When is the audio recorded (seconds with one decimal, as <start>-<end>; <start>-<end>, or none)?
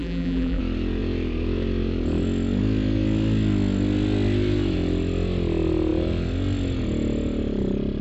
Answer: 0.6-8.0